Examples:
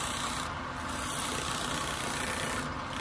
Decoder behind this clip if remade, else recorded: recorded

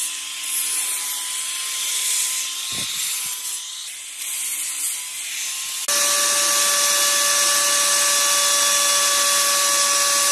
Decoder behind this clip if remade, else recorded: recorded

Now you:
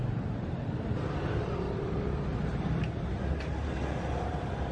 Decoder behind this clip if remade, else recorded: remade, vocoder, BigVGAN v2